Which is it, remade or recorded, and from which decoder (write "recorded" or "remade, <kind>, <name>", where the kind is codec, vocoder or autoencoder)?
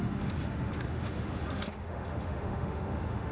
remade, autoencoder, DAC-VAE